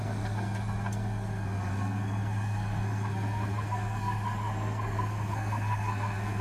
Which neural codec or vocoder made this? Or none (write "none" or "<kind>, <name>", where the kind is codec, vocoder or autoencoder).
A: codec, SNAC